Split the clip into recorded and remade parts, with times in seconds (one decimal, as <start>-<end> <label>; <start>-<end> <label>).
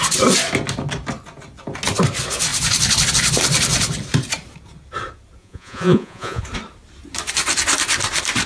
0.0-5.4 recorded; 5.4-6.4 remade; 6.4-8.5 recorded